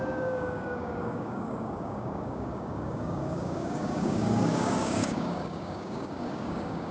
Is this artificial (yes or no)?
yes